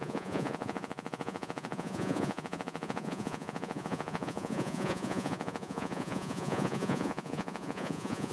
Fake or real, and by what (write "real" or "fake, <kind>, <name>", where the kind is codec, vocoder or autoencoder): fake, vocoder, Vocos